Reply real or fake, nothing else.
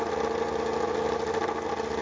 real